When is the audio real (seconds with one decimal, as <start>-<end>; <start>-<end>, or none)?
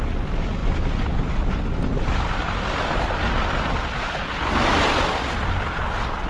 0.0-6.3